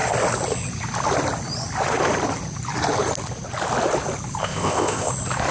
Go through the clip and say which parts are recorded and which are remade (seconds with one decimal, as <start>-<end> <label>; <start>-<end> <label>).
0.0-4.4 recorded; 4.4-5.1 remade; 5.1-5.5 recorded